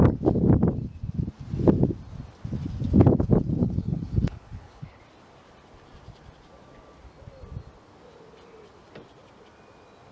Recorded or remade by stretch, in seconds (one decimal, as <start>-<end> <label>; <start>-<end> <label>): 0.0-3.6 recorded; 3.6-5.0 remade; 5.0-10.1 recorded